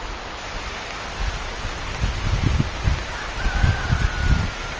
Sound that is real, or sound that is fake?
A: real